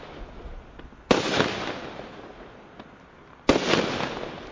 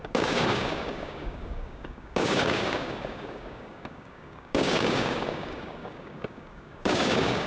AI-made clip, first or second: second